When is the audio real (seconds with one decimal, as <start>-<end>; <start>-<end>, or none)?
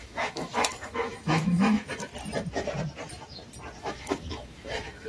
2.1-3.8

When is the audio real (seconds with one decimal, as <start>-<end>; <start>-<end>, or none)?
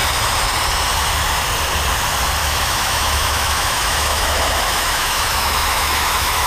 0.0-2.4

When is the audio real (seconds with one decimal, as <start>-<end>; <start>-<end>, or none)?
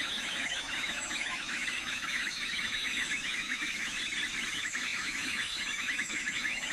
4.0-4.5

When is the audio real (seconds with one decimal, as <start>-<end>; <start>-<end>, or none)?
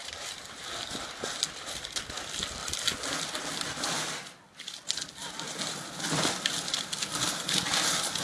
0.0-8.2